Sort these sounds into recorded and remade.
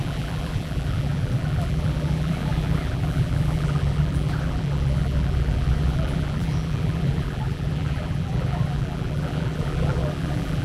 remade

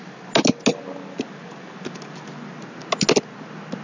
recorded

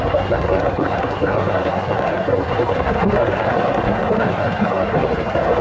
remade